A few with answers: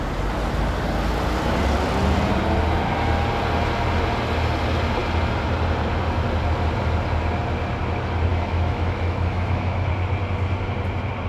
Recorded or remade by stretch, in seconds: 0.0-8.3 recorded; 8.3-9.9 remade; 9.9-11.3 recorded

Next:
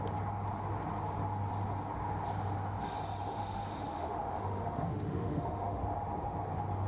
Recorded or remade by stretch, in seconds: 0.0-3.3 recorded; 3.3-5.8 remade; 5.8-6.9 recorded

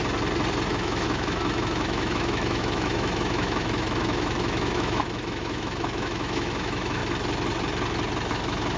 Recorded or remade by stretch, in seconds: 0.0-0.7 recorded; 0.7-7.0 remade; 7.0-8.3 recorded; 8.3-8.8 remade